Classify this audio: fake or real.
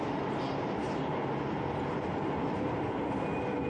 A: real